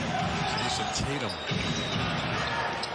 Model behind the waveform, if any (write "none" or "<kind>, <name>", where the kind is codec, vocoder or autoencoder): none